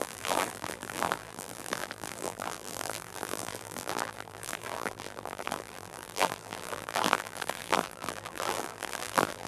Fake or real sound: fake